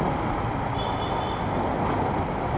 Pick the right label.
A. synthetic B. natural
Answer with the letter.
B